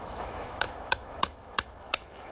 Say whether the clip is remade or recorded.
remade